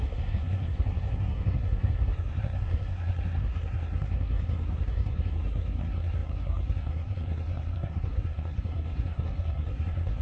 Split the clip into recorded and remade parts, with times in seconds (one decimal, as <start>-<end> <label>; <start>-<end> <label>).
0.0-10.2 remade